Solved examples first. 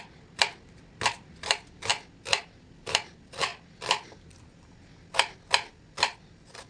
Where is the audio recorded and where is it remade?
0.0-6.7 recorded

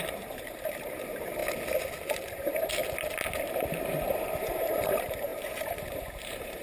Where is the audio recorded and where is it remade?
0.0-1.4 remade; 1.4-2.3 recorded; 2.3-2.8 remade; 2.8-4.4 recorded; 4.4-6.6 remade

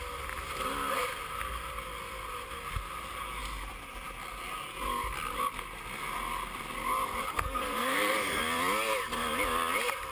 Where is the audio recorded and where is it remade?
0.0-7.3 recorded; 7.3-8.4 remade; 8.4-10.1 recorded